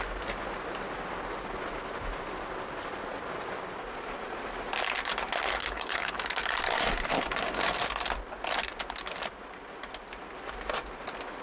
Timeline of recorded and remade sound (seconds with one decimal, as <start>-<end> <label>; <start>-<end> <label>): 0.0-5.6 recorded; 5.6-6.2 remade; 6.2-11.4 recorded